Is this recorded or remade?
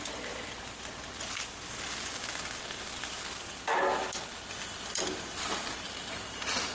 recorded